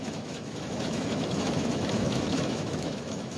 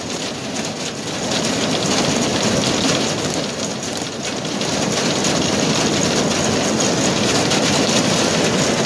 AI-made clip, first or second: first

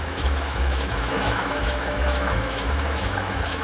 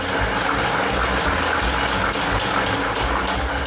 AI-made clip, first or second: first